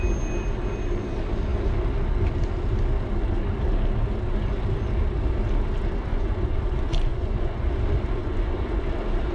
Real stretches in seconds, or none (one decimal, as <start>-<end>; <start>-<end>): 0.0-6.1; 6.6-7.1; 7.6-8.2; 8.8-9.3